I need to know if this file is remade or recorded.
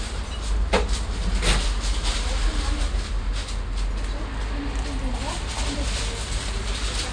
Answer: recorded